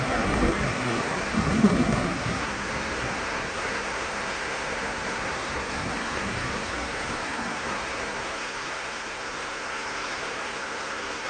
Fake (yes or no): yes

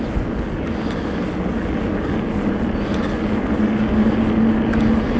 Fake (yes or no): no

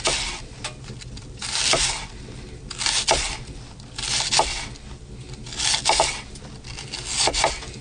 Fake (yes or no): no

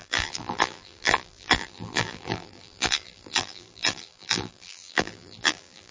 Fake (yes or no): yes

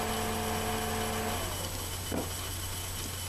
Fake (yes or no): no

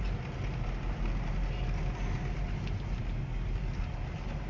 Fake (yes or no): no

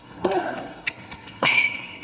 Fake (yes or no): yes